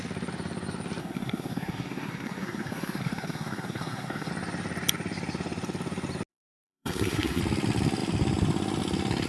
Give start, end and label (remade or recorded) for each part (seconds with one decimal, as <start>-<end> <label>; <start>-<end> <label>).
0.0-1.0 recorded; 1.0-4.3 remade; 4.3-6.3 recorded; 6.3-7.4 remade; 7.4-9.3 recorded